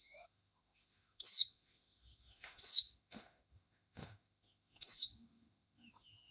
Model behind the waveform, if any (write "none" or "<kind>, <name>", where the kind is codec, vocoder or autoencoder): autoencoder, DAC-VAE